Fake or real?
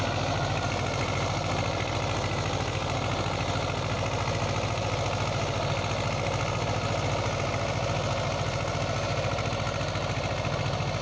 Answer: real